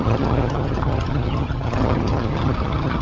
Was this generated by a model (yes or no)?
yes